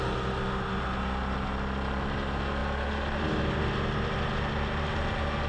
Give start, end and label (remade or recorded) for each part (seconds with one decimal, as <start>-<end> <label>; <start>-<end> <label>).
0.0-5.5 recorded